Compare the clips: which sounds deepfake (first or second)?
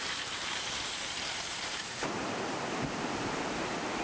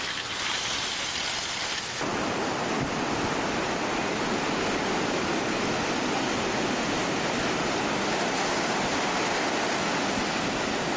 first